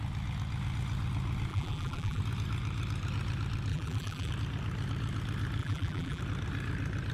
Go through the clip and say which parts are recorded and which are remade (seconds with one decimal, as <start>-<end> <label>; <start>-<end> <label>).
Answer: 0.0-1.5 recorded; 1.5-2.2 remade; 2.2-3.7 recorded; 3.7-4.3 remade; 4.3-5.6 recorded; 5.6-6.2 remade; 6.2-7.1 recorded